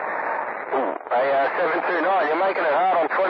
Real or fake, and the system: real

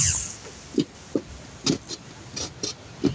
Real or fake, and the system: fake, vocoder, BigVGAN v2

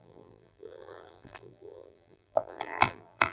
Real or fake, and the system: fake, vocoder, BigVGAN v2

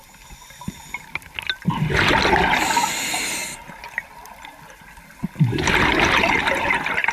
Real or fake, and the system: real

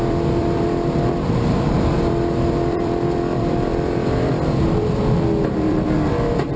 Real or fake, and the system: fake, vocoder, BigVGAN v2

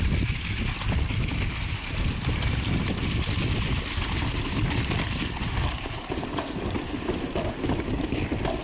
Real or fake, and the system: real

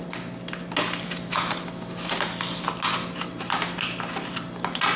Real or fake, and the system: real